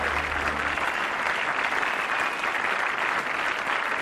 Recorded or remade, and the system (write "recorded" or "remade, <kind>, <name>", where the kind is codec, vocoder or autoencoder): recorded